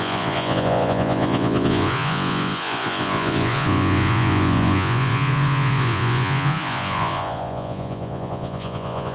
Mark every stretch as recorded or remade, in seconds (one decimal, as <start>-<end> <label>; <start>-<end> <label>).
0.0-9.1 remade